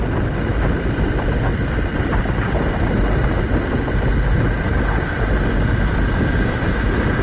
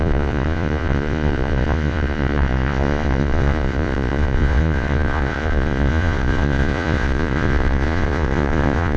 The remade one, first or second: second